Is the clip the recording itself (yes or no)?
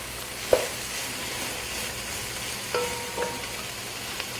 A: yes